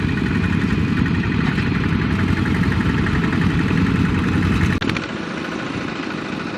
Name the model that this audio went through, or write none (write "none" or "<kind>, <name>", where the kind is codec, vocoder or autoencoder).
none